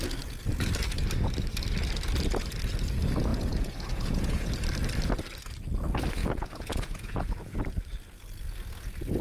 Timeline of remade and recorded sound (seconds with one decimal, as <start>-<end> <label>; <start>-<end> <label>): 0.0-3.3 recorded; 3.3-4.5 remade; 4.5-6.2 recorded; 6.2-7.6 remade; 7.6-9.2 recorded